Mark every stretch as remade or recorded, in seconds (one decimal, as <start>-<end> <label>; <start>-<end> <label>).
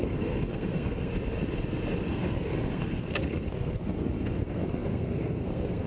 0.0-1.1 remade; 1.1-2.1 recorded; 2.1-5.9 remade